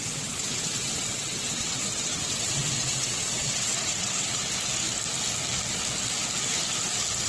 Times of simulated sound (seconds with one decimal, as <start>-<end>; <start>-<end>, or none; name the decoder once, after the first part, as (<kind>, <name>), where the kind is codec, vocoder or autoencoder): 0.0-4.4 (vocoder, WaveNeXt)